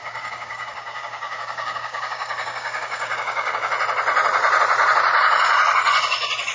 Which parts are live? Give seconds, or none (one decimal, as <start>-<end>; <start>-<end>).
3.7-6.5